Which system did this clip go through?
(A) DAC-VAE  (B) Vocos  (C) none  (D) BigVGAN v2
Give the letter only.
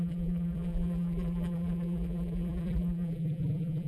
D